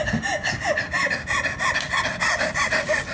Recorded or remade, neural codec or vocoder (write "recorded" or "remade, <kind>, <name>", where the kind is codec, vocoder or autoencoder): recorded